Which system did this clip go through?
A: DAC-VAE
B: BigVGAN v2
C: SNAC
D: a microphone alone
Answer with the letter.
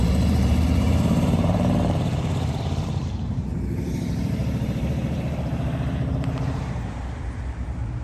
B